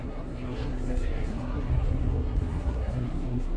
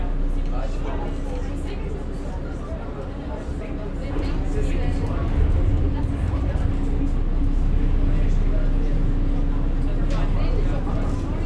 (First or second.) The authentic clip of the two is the second